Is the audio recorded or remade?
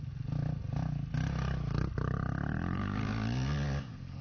recorded